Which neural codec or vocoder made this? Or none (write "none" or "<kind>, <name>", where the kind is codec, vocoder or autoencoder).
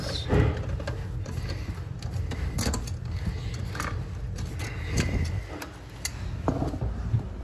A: none